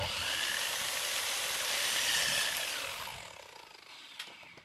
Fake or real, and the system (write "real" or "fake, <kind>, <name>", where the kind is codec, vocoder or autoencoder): real